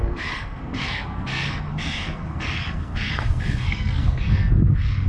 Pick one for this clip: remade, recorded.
remade